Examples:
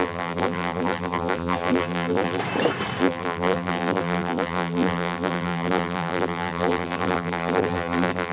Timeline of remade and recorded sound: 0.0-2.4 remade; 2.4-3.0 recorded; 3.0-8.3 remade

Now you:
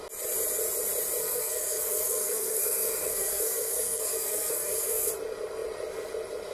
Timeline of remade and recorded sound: 0.0-1.2 recorded; 1.2-5.1 remade; 5.1-6.5 recorded

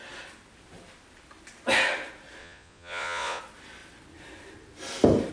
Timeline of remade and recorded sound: 0.0-2.4 recorded; 2.4-3.4 remade; 3.4-5.3 recorded

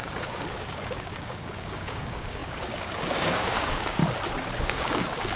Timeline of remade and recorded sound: 0.0-4.0 remade; 4.0-4.6 recorded; 4.6-5.4 remade

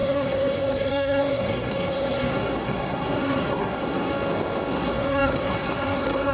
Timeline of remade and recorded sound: 0.0-4.1 remade; 4.1-4.7 recorded; 4.7-6.3 remade

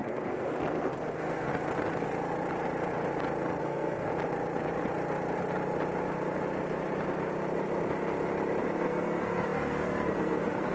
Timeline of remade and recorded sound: 0.0-1.5 remade; 1.5-3.6 recorded; 3.6-4.1 remade; 4.1-8.6 recorded; 8.6-10.7 remade